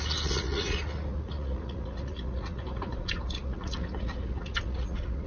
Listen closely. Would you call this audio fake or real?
fake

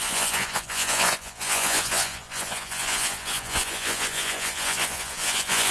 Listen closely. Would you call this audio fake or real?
fake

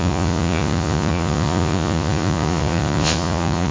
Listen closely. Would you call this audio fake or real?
fake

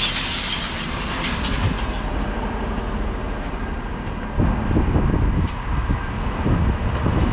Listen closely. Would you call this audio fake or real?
real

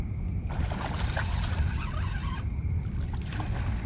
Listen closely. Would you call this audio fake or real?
real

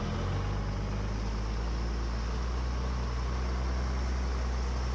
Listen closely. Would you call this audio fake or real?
real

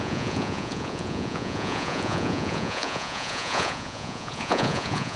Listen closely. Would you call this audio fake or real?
fake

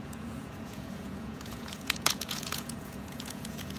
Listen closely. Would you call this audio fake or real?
fake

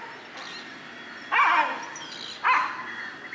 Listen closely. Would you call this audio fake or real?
real